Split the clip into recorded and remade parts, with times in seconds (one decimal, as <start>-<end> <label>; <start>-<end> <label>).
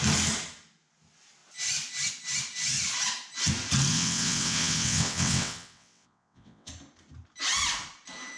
0.0-3.9 recorded; 3.9-6.7 remade; 6.7-8.4 recorded